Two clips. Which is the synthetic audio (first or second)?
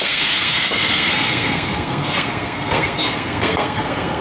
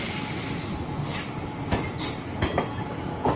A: first